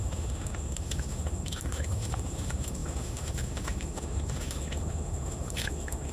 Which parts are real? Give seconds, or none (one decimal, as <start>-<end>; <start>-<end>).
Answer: none